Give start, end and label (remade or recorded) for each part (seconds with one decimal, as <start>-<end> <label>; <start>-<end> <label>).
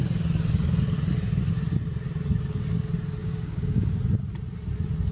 0.0-3.2 recorded; 3.2-3.9 remade; 3.9-5.1 recorded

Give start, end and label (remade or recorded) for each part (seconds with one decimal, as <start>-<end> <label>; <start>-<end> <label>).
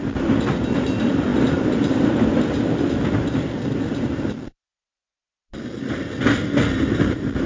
0.0-7.5 recorded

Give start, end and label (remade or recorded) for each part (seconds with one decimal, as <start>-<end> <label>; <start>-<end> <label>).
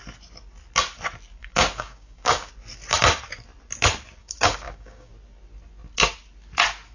0.0-1.4 recorded; 1.4-2.5 remade; 2.5-4.2 recorded; 4.2-5.1 remade; 5.1-6.9 recorded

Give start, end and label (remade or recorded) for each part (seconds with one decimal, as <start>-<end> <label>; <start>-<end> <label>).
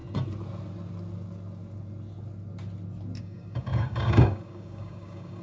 0.0-3.2 recorded; 3.2-5.4 remade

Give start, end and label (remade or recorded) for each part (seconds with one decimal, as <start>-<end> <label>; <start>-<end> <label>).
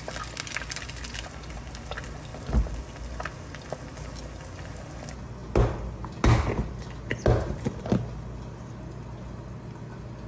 0.0-10.3 recorded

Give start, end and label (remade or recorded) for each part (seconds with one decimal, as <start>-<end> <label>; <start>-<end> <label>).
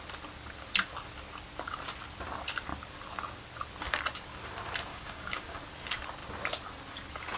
0.0-4.9 recorded; 4.9-5.6 remade; 5.6-7.4 recorded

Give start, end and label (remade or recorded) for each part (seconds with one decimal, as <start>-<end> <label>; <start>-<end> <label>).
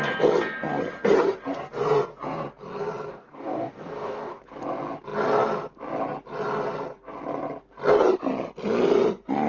0.0-3.1 recorded; 3.1-4.4 remade; 4.4-9.5 recorded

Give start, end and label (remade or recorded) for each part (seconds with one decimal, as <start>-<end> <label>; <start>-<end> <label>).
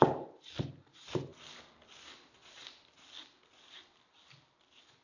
0.0-5.0 recorded